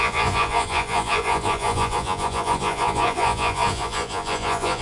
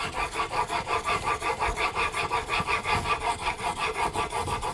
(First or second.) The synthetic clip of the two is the first